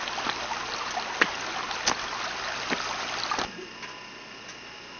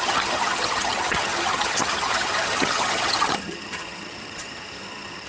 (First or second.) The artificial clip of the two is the second